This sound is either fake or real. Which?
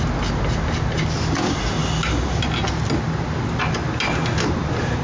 real